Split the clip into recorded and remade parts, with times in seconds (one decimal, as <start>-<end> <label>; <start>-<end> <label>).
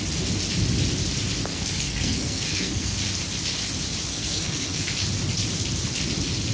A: 0.0-1.5 recorded; 1.5-3.0 remade; 3.0-4.1 recorded; 4.1-4.9 remade; 4.9-6.5 recorded